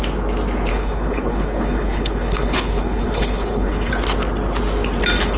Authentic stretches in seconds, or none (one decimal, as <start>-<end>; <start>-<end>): 0.0-0.7; 3.9-5.4

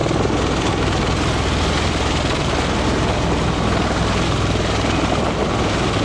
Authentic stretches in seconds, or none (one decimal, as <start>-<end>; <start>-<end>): 0.0-6.0